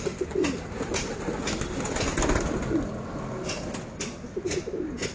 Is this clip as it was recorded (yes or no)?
yes